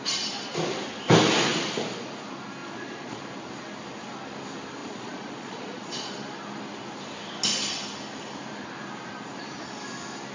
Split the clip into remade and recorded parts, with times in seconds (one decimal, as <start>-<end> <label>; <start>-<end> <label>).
0.0-2.6 recorded; 2.6-3.2 remade; 3.2-4.8 recorded; 4.8-6.1 remade; 6.1-10.3 recorded